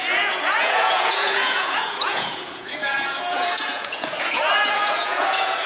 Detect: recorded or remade remade